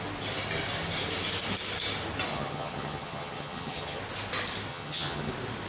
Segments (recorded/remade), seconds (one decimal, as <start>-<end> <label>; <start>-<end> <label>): 0.0-2.3 recorded; 2.3-4.0 remade; 4.0-4.7 recorded; 4.7-5.3 remade; 5.3-5.7 recorded